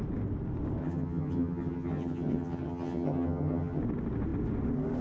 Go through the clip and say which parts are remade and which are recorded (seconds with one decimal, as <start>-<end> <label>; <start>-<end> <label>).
0.0-0.8 recorded; 0.8-3.8 remade; 3.8-5.0 recorded